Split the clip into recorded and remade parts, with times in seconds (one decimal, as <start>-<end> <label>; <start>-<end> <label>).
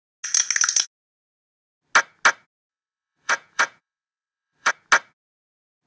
0.0-2.7 recorded; 2.7-4.7 remade; 4.7-5.9 recorded